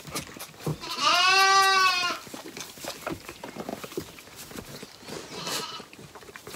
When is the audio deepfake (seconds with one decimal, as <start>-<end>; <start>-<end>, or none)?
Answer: none